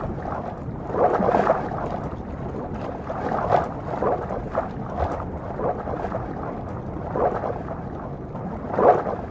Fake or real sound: real